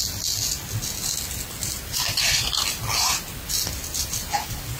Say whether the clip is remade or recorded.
recorded